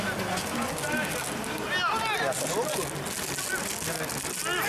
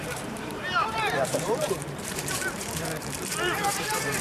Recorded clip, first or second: first